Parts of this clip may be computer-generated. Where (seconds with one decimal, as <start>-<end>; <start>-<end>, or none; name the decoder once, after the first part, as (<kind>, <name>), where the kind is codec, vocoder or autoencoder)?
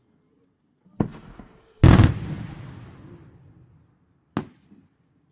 none